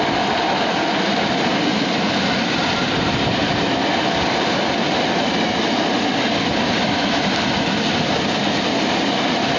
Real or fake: real